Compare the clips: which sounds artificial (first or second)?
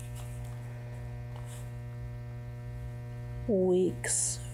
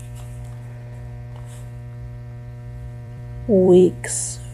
second